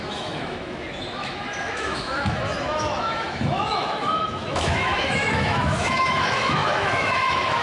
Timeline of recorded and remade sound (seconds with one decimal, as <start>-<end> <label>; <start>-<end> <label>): 0.0-7.6 remade

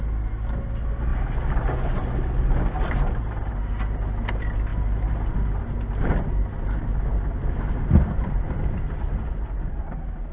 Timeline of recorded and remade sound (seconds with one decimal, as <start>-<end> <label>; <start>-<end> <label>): 0.0-7.1 recorded; 7.1-9.7 remade; 9.7-10.3 recorded

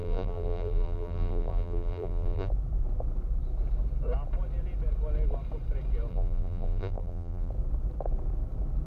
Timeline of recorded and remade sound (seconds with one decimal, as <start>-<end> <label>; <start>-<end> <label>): 0.0-2.5 remade; 2.5-6.1 recorded; 6.1-7.5 remade; 7.5-8.9 recorded

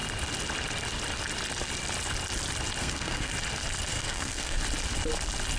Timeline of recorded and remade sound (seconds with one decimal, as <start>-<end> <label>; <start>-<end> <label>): 0.0-2.8 recorded; 2.8-3.3 remade; 3.3-3.9 recorded; 3.9-4.6 remade; 4.6-5.6 recorded

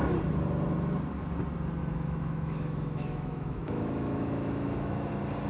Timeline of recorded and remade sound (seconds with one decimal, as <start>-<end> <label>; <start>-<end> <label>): 0.0-1.8 recorded; 1.8-5.1 remade; 5.1-5.5 recorded

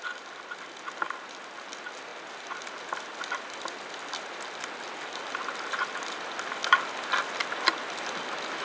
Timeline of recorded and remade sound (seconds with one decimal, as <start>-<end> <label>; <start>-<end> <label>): 0.0-8.6 recorded